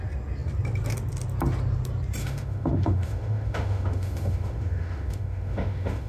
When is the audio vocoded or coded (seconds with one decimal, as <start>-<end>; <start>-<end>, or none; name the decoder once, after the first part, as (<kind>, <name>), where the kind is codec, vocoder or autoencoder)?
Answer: 2.2-6.1 (autoencoder, DAC-VAE)